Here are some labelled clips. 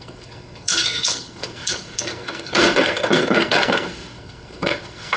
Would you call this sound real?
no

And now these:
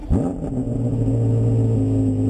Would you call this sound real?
yes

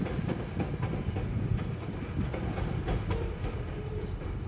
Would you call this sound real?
yes